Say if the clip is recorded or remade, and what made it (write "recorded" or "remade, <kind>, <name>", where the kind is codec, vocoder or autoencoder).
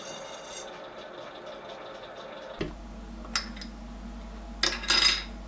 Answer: recorded